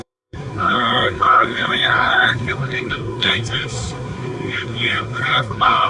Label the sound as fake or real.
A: fake